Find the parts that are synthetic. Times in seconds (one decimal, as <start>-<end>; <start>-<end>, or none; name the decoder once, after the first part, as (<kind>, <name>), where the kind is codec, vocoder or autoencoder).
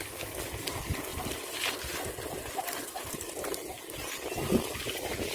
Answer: 1.1-2.5 (vocoder, BigVGAN v2); 2.9-4.0